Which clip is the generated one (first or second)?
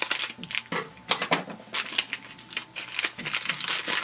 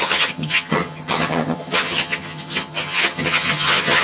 second